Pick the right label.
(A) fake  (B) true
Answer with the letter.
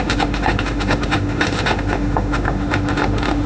A